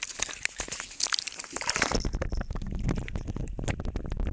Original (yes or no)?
yes